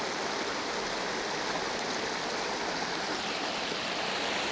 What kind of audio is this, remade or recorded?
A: recorded